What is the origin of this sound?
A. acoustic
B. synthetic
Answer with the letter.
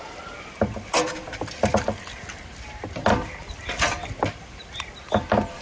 A